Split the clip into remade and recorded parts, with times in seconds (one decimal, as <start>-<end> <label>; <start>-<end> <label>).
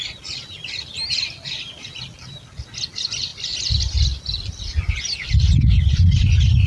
0.0-6.7 recorded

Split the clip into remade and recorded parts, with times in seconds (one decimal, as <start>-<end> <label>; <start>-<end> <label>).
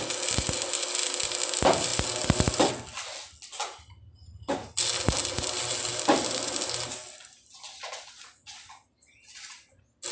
0.0-10.1 recorded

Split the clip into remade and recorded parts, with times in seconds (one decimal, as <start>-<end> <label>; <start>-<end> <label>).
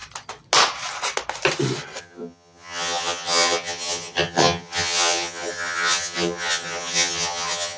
0.0-2.0 recorded; 2.0-7.8 remade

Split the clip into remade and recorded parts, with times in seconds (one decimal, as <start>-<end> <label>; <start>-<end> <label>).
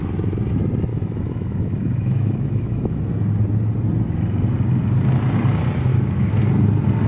0.0-0.9 recorded; 0.9-3.0 remade; 3.0-5.9 recorded; 5.9-6.4 remade; 6.4-7.1 recorded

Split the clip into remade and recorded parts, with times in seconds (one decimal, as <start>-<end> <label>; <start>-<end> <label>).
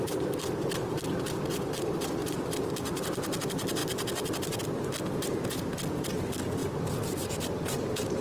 0.0-2.2 recorded; 2.2-3.0 remade; 3.0-6.6 recorded; 6.6-8.2 remade